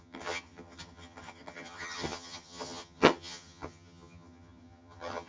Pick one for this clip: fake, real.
fake